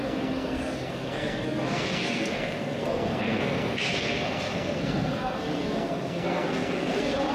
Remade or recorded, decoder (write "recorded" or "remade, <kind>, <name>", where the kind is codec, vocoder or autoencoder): remade, codec, SNAC